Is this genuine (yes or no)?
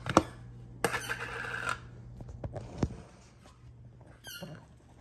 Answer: yes